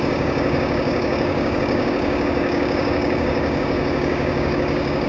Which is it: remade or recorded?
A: remade